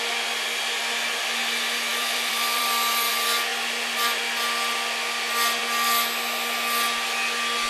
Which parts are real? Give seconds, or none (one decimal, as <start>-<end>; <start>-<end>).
0.0-1.9; 3.1-7.7